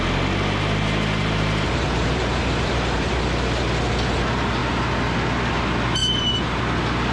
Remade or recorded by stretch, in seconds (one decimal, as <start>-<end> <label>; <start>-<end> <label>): 0.0-1.2 recorded; 1.2-3.1 remade; 3.1-6.0 recorded; 6.0-6.6 remade; 6.6-7.1 recorded